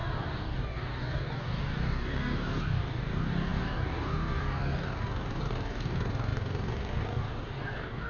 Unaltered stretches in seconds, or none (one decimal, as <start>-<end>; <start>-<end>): none